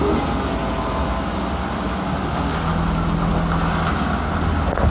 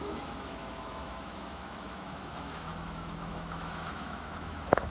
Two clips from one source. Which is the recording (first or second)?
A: first